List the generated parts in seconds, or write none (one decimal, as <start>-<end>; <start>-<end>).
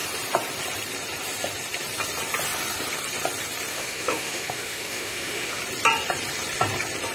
3.7-5.6